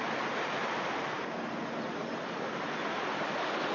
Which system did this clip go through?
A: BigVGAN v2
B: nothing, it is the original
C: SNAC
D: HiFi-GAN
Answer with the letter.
B